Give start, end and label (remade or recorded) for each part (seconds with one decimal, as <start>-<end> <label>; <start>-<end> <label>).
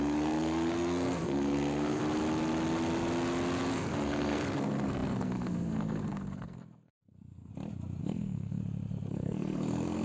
0.0-2.0 remade; 2.0-3.7 recorded; 3.7-7.5 remade; 7.5-8.0 recorded; 8.0-8.6 remade; 8.6-9.1 recorded; 9.1-10.0 remade